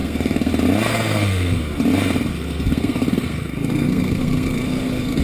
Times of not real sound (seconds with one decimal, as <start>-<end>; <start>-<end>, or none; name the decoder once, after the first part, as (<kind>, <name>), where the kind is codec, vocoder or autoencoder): 0.0-0.5 (codec, SNAC); 0.9-1.6; 2.3-5.2